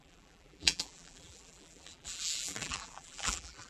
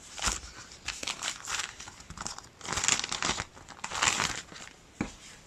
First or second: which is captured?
second